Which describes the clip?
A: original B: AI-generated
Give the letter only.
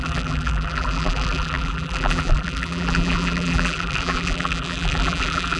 B